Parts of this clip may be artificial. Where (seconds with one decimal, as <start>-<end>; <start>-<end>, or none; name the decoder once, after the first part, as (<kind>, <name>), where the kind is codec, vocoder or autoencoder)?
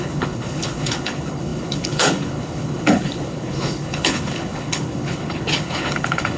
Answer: 0.0-6.4 (codec, HILCodec)